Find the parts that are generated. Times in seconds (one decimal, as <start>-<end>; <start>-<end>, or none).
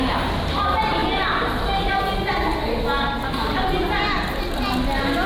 1.0-2.0